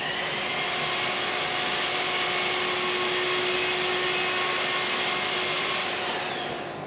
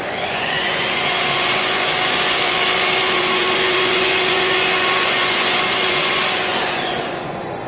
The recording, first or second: first